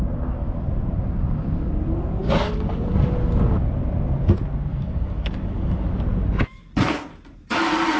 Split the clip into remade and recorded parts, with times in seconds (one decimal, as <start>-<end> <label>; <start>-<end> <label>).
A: 0.0-2.2 recorded; 2.2-3.1 remade; 3.1-4.7 recorded; 4.7-5.9 remade; 5.9-8.0 recorded